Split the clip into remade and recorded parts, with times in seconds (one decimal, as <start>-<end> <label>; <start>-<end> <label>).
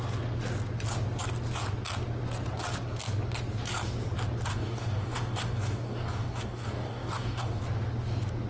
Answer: 0.0-4.5 recorded; 4.5-7.6 remade; 7.6-8.5 recorded